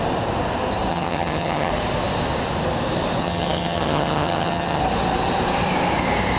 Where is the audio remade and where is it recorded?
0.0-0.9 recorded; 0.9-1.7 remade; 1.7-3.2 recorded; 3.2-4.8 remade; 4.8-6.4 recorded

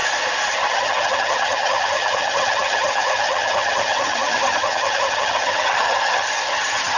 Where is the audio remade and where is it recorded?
0.0-0.5 recorded; 0.5-7.0 remade

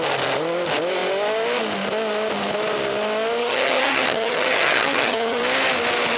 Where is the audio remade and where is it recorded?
0.0-3.4 recorded; 3.4-5.4 remade; 5.4-6.2 recorded

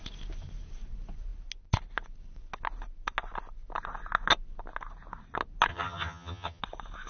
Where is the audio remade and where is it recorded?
0.0-5.7 recorded; 5.7-6.6 remade; 6.6-7.1 recorded

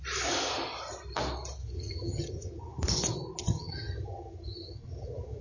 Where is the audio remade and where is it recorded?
0.0-1.6 recorded; 1.6-2.8 remade; 2.8-3.4 recorded; 3.4-5.4 remade

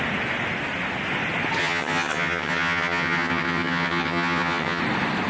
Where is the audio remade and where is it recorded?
0.0-1.6 recorded; 1.6-4.8 remade; 4.8-5.3 recorded

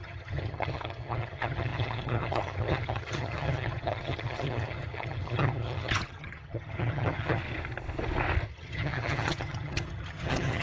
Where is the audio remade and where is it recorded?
0.0-7.4 remade; 7.4-8.5 recorded; 8.5-10.6 remade

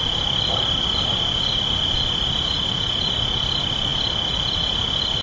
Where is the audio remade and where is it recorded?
0.0-5.2 recorded